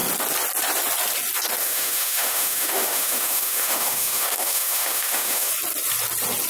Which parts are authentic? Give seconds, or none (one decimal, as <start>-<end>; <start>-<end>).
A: 0.0-1.6; 5.5-6.5